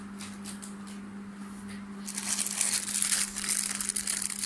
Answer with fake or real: real